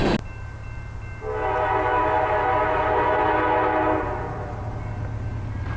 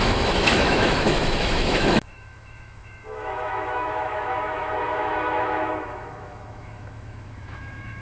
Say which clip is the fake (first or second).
second